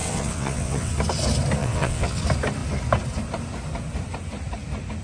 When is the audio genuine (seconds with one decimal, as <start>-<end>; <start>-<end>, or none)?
0.9-1.6; 2.2-5.0